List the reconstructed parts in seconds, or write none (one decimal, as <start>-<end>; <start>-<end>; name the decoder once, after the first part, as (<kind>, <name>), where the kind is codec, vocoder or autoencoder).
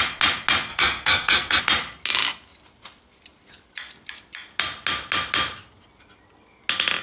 0.7-1.6 (codec, SNAC)